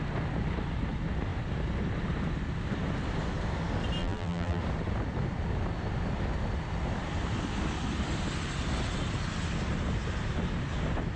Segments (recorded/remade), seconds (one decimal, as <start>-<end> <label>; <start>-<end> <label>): 0.0-4.0 recorded; 4.0-4.6 remade; 4.6-11.2 recorded